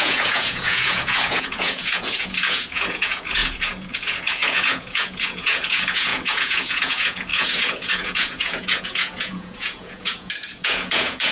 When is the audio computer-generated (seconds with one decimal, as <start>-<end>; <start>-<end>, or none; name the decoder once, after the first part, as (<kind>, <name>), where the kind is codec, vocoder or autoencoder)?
0.0-11.3 (vocoder, Vocos)